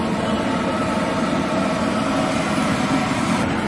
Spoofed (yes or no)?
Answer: no